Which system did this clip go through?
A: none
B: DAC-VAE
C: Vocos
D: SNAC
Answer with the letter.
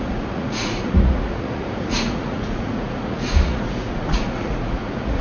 C